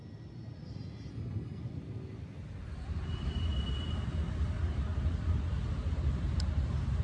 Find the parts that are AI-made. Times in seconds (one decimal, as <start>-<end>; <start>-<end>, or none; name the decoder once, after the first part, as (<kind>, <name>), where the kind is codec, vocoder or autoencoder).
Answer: 1.1-1.6 (codec, SNAC)